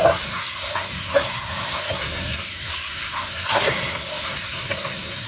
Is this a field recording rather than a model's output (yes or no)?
no